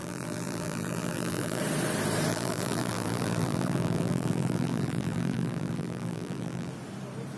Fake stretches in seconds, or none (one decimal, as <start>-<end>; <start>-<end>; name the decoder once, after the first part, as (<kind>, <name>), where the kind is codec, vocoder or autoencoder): 0.0-1.6 (vocoder, BigVGAN v2); 2.3-6.7